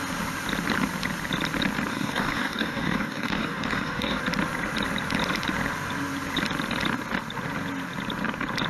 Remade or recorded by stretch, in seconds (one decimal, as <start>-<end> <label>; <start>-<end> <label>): 0.0-1.9 recorded; 1.9-4.2 remade; 4.2-8.7 recorded